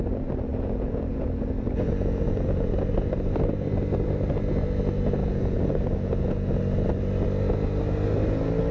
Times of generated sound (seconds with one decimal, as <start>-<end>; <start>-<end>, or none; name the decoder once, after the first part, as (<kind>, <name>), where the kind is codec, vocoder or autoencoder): 0.5-2.7 (vocoder, Vocos); 5.2-6.6